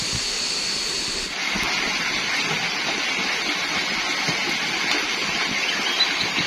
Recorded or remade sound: recorded